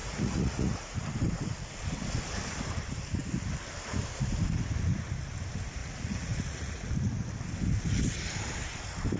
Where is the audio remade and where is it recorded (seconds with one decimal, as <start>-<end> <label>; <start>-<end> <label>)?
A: 0.0-1.1 remade; 1.1-5.8 recorded; 5.8-6.9 remade; 6.9-9.2 recorded